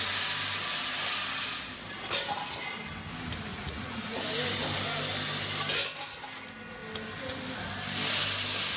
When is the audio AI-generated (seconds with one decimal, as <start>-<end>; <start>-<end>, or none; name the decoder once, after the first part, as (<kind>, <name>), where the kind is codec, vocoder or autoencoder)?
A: 3.5-4.2 (vocoder, Vocos)